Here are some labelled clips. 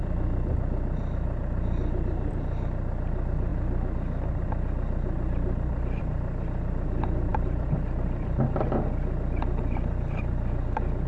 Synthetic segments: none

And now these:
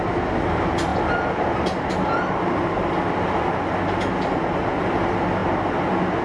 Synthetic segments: none

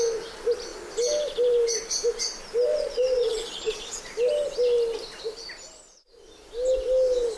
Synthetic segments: 2.7-4.0 (vocoder, Vocos)